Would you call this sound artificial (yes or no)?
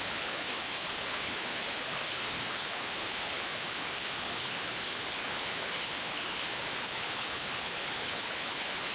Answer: yes